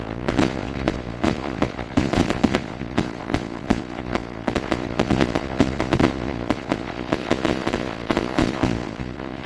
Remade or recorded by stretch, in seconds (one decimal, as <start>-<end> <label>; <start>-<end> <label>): 0.0-9.5 remade